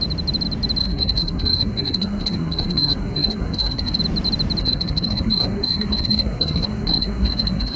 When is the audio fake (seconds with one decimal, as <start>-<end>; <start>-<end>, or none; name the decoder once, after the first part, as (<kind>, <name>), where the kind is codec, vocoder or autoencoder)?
0.8-4.0 (codec, SNAC); 4.6-7.8

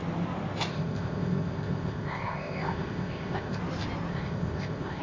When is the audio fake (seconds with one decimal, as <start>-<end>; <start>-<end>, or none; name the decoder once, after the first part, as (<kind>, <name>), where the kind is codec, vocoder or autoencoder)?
0.7-3.6 (codec, ZipCodec); 4.1-5.0

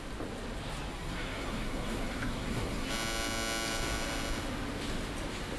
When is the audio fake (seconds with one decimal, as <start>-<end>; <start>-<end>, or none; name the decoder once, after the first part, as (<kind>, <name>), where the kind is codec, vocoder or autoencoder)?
0.9-2.9 (codec, SNAC)

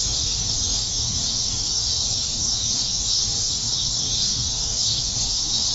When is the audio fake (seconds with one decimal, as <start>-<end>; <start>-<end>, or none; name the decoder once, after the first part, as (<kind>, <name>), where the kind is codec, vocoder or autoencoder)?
0.0-5.7 (codec, DAC)

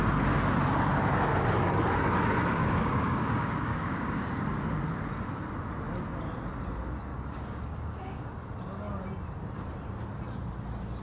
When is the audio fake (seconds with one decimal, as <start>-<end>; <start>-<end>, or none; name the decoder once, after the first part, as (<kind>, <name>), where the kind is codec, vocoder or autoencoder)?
2.6-4.5 (codec, DAC); 7.1-8.3

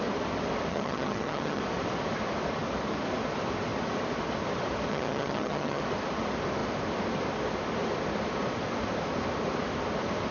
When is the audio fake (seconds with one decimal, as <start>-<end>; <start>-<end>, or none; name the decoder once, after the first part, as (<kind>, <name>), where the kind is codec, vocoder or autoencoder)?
0.7-1.6 (vocoder, HiFi-GAN); 4.9-5.8

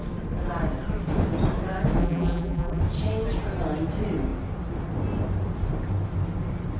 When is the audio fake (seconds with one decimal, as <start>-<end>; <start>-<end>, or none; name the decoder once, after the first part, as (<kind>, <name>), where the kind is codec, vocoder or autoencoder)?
2.0-2.8 (vocoder, BigVGAN v2)